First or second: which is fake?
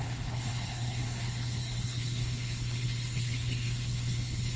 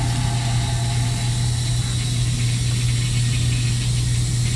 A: first